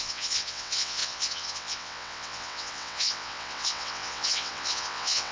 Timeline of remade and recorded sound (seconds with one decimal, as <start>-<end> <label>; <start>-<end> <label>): 0.0-5.3 remade